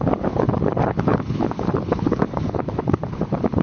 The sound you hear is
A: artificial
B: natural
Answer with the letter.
A